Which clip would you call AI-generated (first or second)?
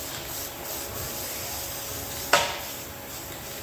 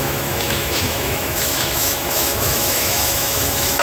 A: second